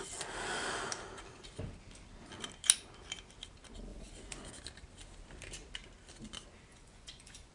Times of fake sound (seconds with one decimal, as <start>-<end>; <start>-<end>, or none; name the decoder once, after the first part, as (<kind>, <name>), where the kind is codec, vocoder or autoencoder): 3.9-4.5 (vocoder, Vocos); 6.7-7.5